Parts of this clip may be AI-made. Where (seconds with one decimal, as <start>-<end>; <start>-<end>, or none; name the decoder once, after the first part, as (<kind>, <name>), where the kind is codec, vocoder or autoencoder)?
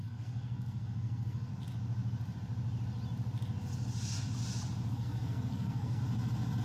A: 0.0-1.5 (codec, SNAC); 4.9-6.0